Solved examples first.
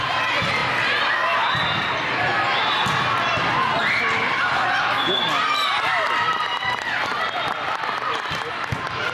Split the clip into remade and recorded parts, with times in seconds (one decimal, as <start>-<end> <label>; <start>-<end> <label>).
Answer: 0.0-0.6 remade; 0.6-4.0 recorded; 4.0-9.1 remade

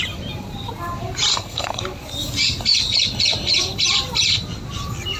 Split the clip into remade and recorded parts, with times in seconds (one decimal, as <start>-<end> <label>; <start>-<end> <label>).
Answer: 0.0-1.3 recorded; 1.3-1.8 remade; 1.8-5.2 recorded

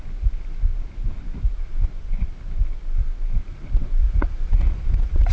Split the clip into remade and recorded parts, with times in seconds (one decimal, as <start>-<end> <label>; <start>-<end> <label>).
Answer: 0.0-4.0 recorded; 4.0-5.3 remade